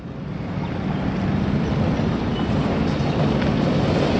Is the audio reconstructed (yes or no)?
no